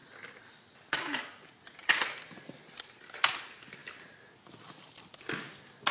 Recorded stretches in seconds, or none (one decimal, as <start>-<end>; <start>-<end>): 0.0-5.9